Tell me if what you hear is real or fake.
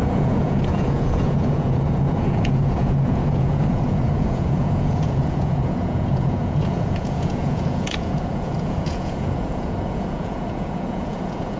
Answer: fake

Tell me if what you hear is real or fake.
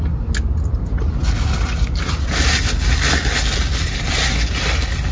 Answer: real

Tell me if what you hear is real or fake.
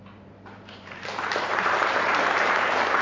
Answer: fake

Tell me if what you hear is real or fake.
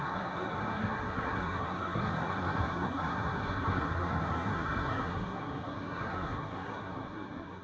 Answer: fake